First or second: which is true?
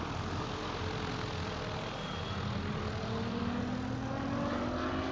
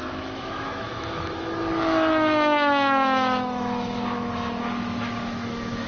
first